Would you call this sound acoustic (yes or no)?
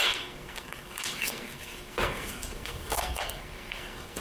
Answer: no